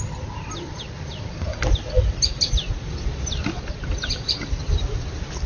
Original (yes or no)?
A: no